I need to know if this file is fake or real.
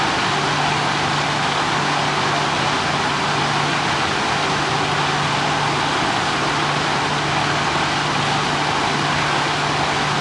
real